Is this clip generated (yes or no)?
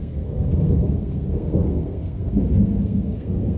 yes